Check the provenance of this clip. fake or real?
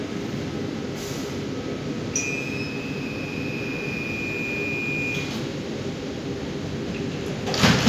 real